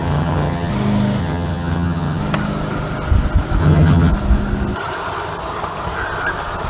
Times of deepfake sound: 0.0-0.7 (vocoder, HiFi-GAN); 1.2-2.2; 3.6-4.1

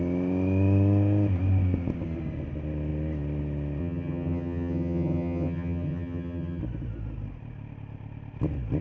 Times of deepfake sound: 3.8-6.6 (vocoder, HiFi-GAN)

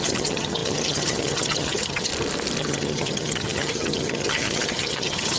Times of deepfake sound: 0.0-2.1 (vocoder, HiFi-GAN); 2.6-5.4